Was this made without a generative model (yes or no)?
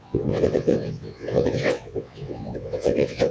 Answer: no